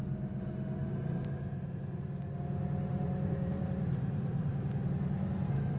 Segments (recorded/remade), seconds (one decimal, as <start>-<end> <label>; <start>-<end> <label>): 0.0-2.9 recorded; 2.9-4.5 remade; 4.5-5.8 recorded